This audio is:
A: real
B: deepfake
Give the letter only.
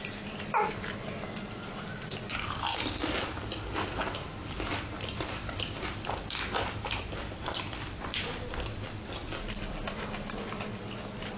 B